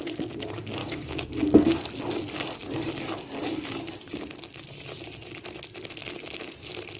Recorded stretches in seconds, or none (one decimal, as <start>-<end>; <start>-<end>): 0.0-0.8; 1.8-7.0